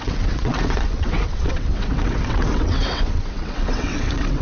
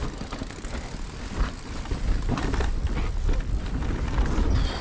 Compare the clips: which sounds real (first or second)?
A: second